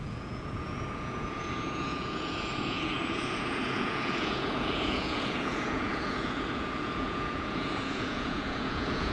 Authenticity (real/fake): fake